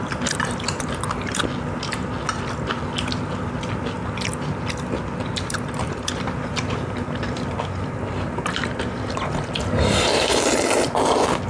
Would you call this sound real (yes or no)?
yes